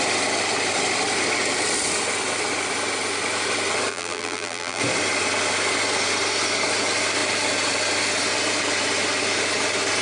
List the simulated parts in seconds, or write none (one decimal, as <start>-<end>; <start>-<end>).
3.9-4.8